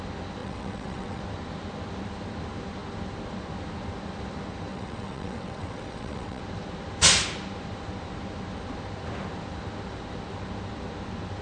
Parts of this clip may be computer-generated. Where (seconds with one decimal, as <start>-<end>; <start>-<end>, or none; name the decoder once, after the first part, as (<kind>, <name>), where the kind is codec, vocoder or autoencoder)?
0.4-1.2 (vocoder, WaveNeXt); 4.7-6.4